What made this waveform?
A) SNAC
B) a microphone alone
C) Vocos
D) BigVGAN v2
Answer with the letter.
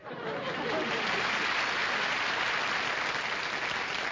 B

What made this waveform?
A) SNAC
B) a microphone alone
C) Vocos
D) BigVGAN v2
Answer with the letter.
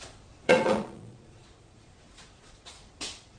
C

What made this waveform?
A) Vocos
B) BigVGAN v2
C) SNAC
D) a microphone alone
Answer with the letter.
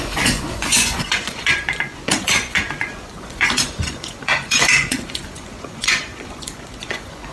A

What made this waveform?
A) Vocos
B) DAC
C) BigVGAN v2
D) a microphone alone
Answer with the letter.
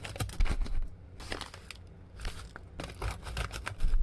D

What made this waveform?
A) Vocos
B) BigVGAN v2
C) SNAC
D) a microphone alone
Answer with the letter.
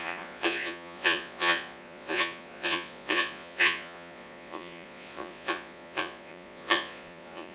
A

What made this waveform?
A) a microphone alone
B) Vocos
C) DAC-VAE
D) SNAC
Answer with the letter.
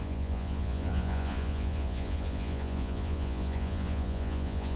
B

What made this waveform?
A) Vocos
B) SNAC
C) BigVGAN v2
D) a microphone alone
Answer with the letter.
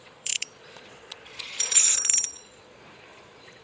A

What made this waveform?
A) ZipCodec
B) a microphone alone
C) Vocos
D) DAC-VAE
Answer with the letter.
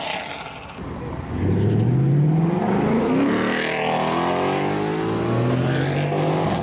B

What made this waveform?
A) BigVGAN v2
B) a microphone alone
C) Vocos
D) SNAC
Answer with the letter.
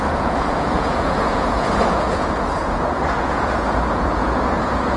C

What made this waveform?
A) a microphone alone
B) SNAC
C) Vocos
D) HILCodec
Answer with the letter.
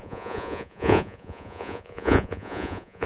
C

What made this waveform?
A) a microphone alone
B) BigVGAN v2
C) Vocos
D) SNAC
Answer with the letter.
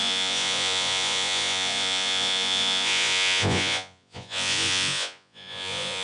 C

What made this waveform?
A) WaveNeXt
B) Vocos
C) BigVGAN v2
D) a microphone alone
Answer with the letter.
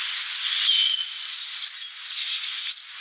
D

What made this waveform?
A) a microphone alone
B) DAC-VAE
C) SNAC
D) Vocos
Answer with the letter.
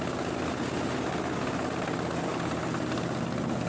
A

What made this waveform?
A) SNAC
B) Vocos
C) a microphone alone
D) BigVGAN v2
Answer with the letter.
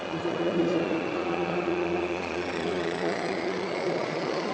B